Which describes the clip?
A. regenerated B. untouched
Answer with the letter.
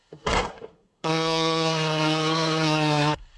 A